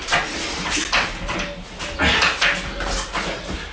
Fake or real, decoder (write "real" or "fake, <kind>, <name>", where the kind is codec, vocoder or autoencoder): real